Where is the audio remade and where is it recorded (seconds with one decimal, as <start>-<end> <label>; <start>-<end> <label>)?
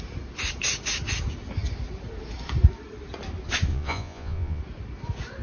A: 0.0-3.7 recorded; 3.7-4.6 remade; 4.6-5.4 recorded